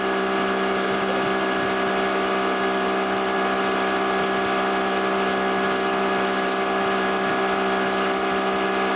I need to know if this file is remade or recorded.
recorded